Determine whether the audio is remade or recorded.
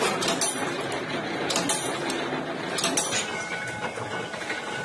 recorded